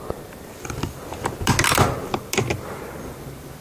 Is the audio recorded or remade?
recorded